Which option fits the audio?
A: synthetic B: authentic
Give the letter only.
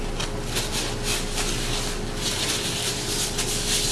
B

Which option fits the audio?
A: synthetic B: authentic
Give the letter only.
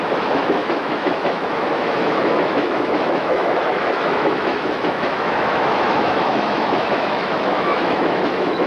A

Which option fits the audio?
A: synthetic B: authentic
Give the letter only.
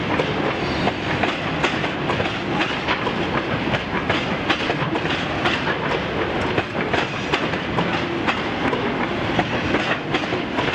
B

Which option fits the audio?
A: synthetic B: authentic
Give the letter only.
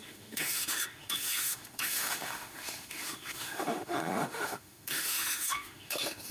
A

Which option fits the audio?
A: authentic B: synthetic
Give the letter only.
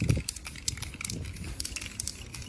A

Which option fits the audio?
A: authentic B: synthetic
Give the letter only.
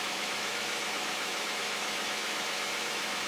B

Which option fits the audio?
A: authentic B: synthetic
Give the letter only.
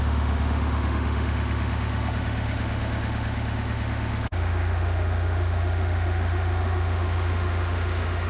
B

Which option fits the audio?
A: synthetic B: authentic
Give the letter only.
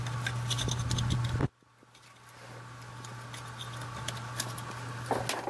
B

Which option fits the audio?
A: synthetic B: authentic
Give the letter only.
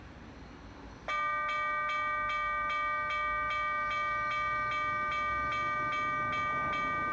B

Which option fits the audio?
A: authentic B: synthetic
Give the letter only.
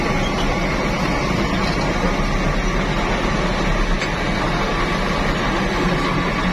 A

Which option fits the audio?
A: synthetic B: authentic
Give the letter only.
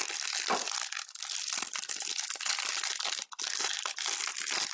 B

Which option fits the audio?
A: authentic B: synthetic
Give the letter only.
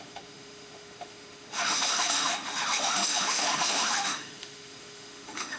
B